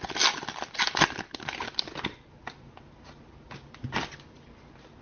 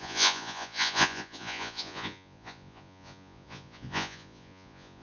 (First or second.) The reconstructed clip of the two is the second